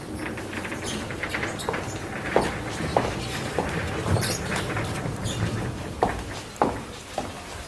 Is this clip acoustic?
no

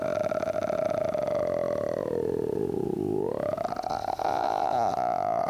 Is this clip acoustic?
yes